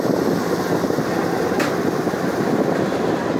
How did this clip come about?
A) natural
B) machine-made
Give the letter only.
A